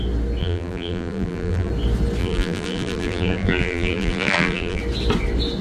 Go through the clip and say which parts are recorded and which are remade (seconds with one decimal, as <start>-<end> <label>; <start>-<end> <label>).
0.0-0.4 recorded; 0.4-1.7 remade; 1.7-2.2 recorded; 2.2-4.8 remade; 4.8-5.6 recorded